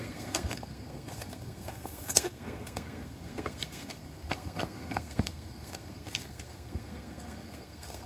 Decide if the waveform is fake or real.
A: fake